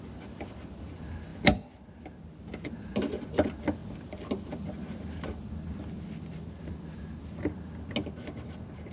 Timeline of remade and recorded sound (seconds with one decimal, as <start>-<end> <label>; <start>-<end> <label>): 0.0-8.9 recorded